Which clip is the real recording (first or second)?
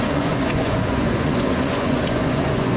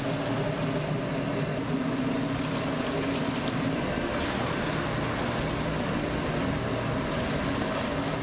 second